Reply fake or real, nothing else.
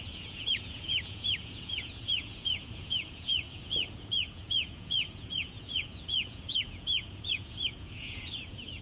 fake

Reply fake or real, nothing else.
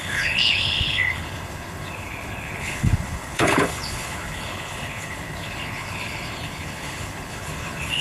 fake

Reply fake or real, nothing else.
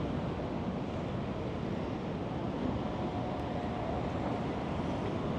real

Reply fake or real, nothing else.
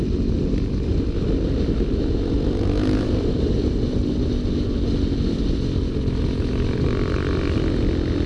real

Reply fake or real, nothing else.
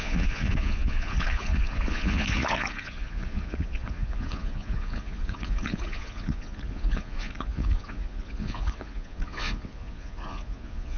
fake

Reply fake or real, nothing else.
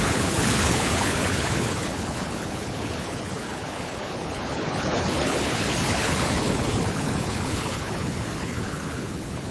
fake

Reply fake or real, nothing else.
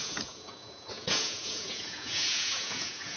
fake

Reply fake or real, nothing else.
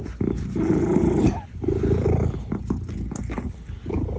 real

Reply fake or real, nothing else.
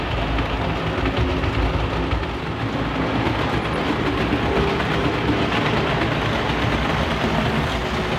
real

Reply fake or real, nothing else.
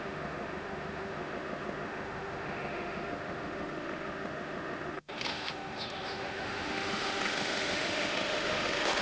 fake